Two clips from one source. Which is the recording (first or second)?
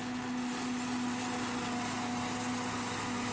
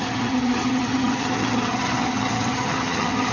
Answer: first